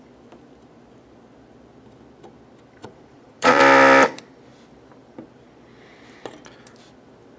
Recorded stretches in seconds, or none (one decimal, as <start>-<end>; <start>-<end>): 0.0-2.8; 3.6-7.4